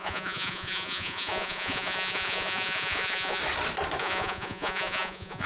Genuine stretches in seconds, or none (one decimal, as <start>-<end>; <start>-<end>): 3.4-4.0